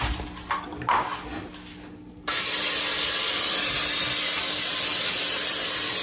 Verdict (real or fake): real